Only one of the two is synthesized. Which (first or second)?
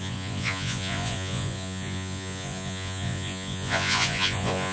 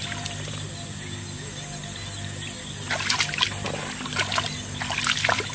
first